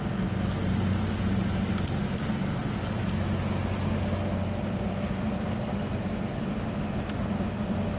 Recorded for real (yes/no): yes